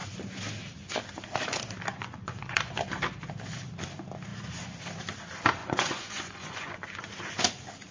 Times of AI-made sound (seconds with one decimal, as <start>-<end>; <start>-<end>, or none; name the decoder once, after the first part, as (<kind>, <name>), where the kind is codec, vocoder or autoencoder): 1.9-2.7 (vocoder, Vocos); 5.6-6.8